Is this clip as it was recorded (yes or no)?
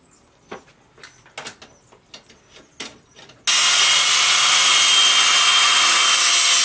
yes